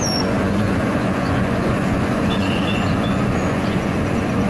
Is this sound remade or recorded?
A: remade